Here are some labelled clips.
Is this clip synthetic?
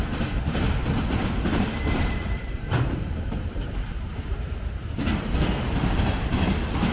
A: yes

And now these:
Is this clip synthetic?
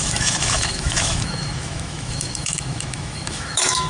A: yes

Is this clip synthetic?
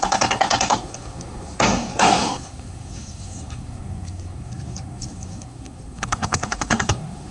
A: yes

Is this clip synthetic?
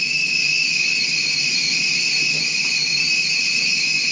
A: no